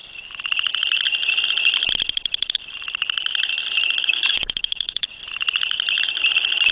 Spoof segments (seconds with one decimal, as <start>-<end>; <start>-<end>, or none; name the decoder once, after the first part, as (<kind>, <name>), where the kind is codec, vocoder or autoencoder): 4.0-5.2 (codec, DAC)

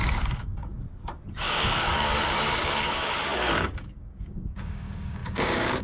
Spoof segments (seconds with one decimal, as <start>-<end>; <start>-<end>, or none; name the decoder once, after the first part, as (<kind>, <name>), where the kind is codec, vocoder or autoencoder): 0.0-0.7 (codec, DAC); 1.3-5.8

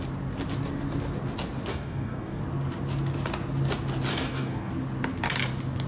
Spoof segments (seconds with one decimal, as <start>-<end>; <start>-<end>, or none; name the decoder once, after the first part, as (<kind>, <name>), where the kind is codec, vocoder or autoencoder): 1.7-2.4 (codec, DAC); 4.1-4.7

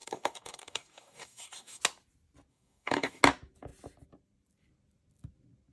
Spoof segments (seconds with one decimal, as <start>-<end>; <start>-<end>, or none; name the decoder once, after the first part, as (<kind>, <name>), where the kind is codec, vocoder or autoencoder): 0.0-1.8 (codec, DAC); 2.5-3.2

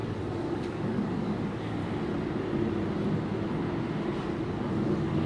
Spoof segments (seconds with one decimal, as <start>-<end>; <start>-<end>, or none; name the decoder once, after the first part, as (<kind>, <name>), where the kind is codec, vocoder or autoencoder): 0.5-1.8 (codec, DAC); 4.4-5.3